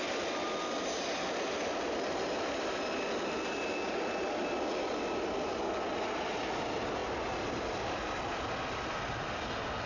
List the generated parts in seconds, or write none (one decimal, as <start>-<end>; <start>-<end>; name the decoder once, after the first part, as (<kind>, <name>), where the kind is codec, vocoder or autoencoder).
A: none